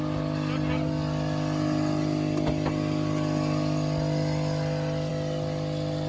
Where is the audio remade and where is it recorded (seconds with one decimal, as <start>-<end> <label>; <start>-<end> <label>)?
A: 0.0-6.1 recorded